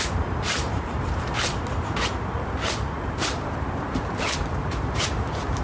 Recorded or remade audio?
remade